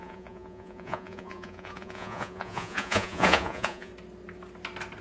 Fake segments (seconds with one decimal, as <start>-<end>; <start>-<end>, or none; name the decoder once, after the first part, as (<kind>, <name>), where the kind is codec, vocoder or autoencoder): 0.0-3.9 (vocoder, Vocos)